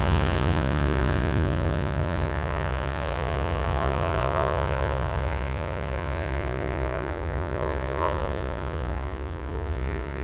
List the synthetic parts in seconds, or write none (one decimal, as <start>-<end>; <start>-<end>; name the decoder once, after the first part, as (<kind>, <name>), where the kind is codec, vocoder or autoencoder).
0.0-10.2 (vocoder, Vocos)

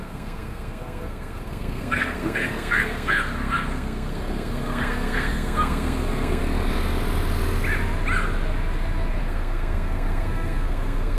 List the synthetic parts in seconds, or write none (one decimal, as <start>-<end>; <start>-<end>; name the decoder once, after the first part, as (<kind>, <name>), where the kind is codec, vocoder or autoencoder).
0.0-6.4 (codec, SNAC); 9.2-11.2

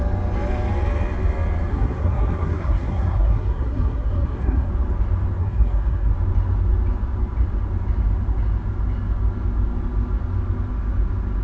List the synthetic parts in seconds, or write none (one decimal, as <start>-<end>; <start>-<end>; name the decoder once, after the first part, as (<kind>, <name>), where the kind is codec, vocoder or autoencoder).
1.7-4.7 (codec, SNAC); 5.4-6.1

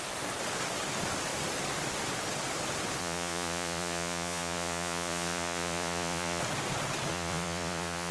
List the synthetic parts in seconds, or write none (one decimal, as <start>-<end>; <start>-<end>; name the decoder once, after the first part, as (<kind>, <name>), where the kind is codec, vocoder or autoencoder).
3.0-6.4 (vocoder, Vocos); 7.1-8.1

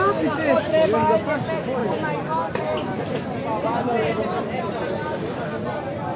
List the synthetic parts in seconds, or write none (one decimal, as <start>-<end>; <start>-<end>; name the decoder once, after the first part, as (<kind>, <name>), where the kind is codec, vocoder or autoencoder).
none

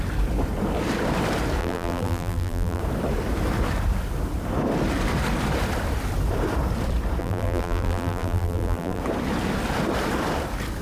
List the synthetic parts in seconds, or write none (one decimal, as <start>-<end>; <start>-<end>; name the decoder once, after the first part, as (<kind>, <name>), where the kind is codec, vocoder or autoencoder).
1.6-2.8 (vocoder, BigVGAN v2); 7.2-9.0

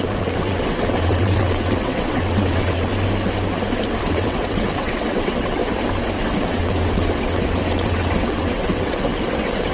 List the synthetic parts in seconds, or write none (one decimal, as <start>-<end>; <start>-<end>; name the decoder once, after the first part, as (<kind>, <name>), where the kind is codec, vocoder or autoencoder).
0.0-2.9 (vocoder, WaveNeXt); 4.0-5.6; 6.2-9.7